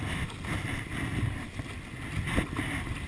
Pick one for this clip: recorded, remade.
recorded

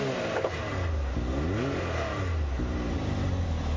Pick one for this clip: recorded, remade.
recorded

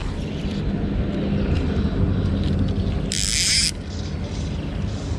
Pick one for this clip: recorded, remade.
recorded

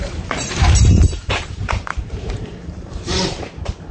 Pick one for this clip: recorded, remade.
remade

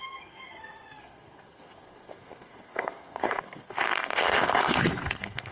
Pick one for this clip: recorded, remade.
remade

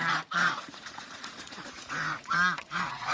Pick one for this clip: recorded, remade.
remade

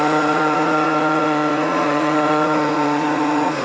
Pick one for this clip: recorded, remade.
remade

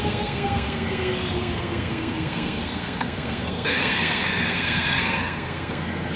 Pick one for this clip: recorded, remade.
remade